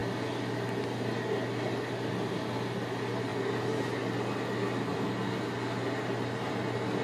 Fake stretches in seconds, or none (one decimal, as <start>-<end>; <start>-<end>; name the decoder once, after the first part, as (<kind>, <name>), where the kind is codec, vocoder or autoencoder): none